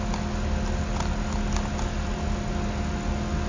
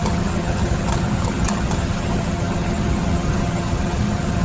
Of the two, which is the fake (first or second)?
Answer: second